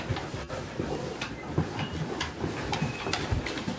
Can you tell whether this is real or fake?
fake